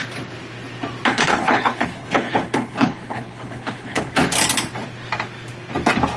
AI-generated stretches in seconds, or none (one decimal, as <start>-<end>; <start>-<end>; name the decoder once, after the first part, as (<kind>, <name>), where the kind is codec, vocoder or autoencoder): 1.1-4.1 (codec, HILCodec)